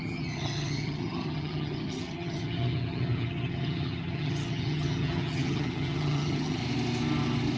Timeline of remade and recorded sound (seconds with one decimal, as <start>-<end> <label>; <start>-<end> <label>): 0.0-6.6 remade; 6.6-7.6 recorded